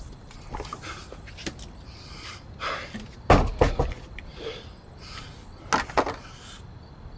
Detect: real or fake real